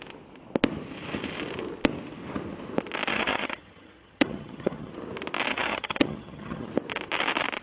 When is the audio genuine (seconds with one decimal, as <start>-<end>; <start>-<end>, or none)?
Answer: 0.0-3.1; 4.9-5.5; 6.7-7.6